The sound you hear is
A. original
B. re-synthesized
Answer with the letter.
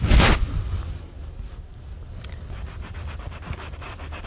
A